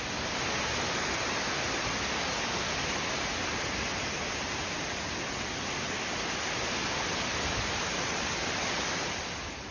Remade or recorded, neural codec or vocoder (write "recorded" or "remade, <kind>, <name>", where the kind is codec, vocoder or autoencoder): recorded